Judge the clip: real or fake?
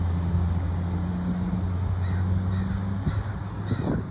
real